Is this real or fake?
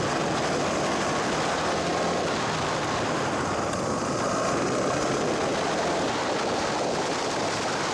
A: real